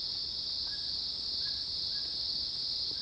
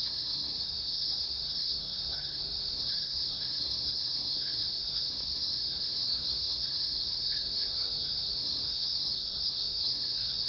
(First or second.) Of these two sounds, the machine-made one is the second